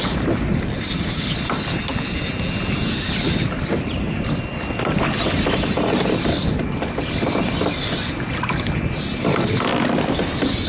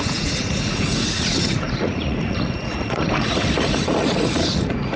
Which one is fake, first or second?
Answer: second